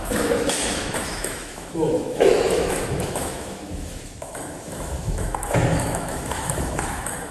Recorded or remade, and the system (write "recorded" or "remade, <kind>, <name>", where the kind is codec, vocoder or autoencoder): remade, autoencoder, DAC-VAE